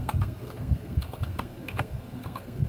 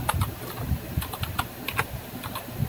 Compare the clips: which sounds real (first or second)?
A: second